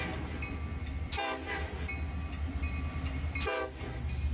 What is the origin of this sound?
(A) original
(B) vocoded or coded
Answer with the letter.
A